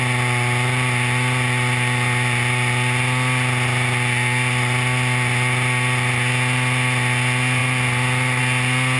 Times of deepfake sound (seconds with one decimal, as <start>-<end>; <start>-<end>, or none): none